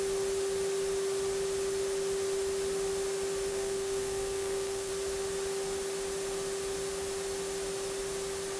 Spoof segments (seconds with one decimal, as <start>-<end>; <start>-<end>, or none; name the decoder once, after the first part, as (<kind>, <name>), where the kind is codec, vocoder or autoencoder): 3.5-4.9 (codec, SNAC)